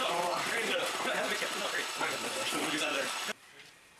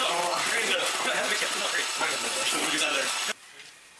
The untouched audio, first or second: second